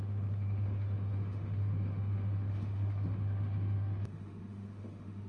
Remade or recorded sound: remade